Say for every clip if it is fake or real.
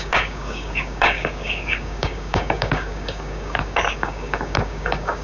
fake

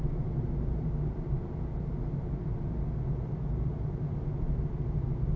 real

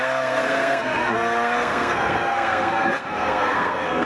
fake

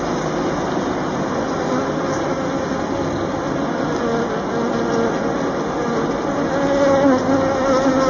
real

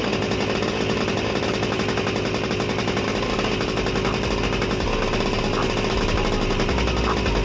real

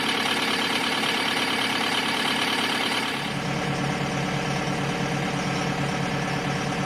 real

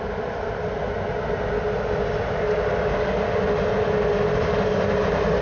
real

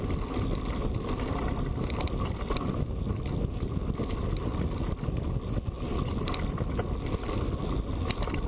real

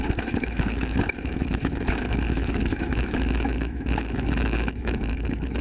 fake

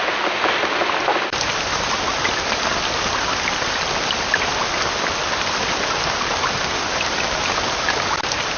real